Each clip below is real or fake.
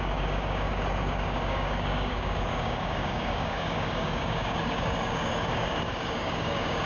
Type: fake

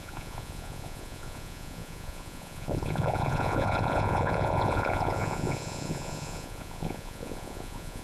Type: fake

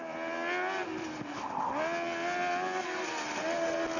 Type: real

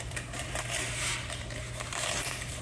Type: fake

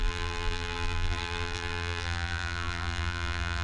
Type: fake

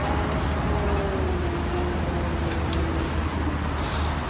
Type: real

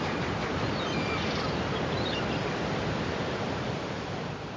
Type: real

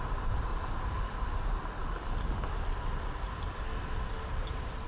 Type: real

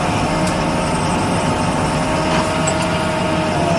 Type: real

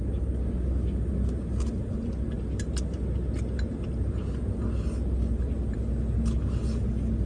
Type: real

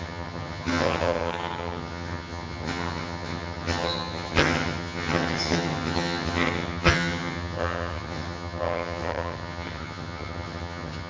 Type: fake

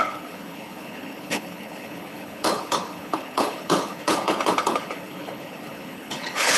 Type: fake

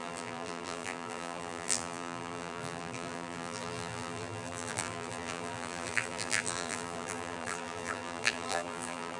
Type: fake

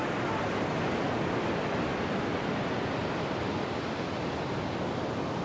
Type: real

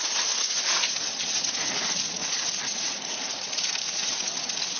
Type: fake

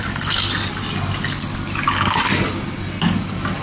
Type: real